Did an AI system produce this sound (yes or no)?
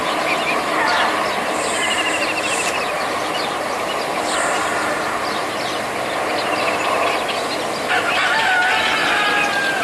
no